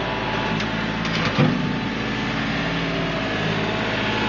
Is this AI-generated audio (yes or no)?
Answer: no